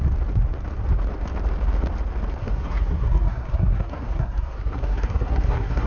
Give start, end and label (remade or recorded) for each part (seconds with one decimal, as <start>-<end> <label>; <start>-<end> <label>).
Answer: 0.0-2.4 recorded; 2.4-5.9 remade